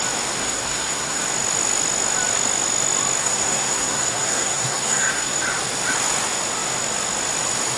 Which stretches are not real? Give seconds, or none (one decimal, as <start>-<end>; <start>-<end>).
0.4-1.2; 3.2-5.4